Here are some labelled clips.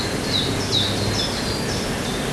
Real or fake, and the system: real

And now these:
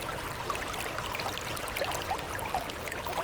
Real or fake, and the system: real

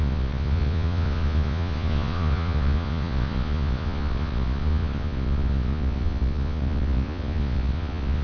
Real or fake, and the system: fake, vocoder, Vocos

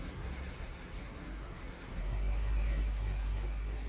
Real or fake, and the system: fake, codec, SNAC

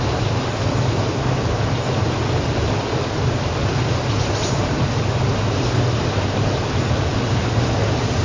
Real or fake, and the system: real